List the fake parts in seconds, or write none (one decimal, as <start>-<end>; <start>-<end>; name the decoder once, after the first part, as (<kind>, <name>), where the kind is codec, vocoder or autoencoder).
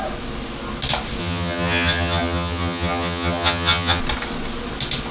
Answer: 1.2-4.0 (vocoder, HiFi-GAN)